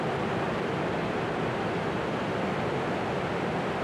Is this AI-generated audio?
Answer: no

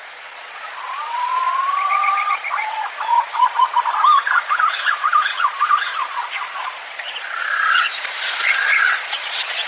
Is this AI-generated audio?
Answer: yes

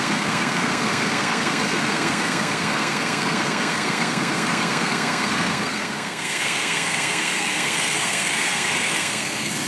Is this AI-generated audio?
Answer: yes